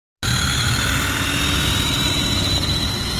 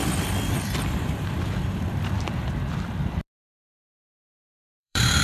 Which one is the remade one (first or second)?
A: second